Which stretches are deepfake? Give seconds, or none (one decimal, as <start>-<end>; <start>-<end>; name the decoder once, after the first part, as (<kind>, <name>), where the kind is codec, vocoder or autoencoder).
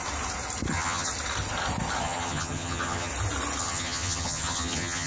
0.7-1.1 (vocoder, HiFi-GAN); 2.0-3.1; 3.6-5.1